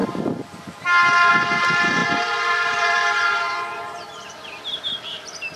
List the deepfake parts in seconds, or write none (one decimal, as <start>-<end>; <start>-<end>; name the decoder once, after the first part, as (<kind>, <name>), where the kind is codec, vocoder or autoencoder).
2.0-5.0 (vocoder, BigVGAN v2)

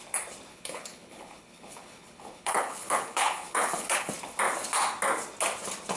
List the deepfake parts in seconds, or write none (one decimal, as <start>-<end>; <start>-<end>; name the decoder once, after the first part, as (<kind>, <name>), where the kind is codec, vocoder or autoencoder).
0.5-4.1 (codec, HILCodec)

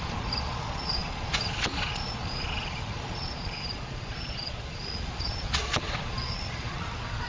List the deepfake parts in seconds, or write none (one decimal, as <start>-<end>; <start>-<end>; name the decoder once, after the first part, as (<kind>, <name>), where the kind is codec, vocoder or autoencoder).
0.0-7.3 (vocoder, Vocos)

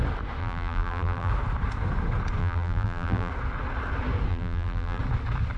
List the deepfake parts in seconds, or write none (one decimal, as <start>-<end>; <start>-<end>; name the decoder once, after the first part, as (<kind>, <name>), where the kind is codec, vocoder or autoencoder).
0.4-1.3 (vocoder, BigVGAN v2); 2.4-3.3; 4.3-5.0

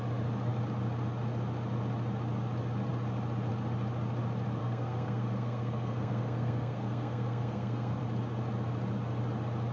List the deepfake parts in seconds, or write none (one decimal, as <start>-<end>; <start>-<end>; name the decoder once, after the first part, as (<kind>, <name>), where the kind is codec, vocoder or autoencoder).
4.6-8.0 (codec, SNAC)